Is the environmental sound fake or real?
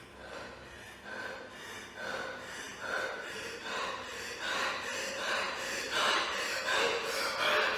real